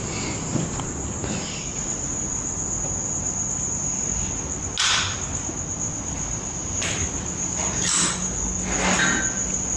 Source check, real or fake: real